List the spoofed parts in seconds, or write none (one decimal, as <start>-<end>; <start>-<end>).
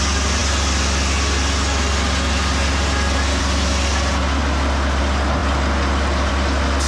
none